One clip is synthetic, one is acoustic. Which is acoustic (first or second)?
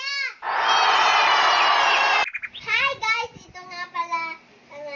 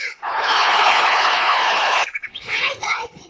first